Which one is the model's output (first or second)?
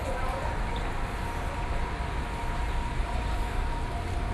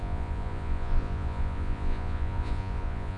second